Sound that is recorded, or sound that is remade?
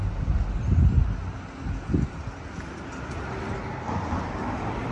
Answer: recorded